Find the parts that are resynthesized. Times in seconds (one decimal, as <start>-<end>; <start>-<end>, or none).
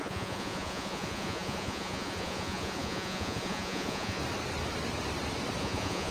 0.0-4.2; 5.6-6.1